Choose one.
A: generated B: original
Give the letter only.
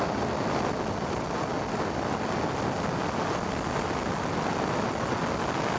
B